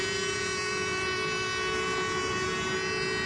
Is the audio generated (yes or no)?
no